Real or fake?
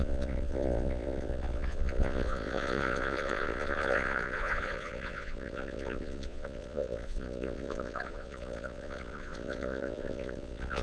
fake